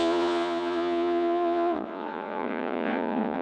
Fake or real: fake